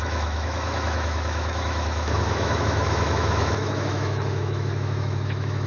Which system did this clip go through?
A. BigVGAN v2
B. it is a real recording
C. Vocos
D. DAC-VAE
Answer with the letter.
D